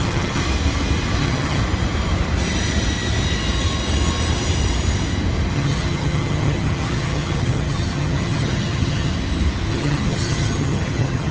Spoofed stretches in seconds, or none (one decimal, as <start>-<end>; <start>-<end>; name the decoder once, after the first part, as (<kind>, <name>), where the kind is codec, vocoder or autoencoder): 0.0-0.4 (vocoder, HiFi-GAN); 1.2-1.6; 5.5-9.1; 9.7-11.3